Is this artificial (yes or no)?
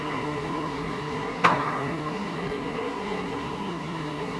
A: yes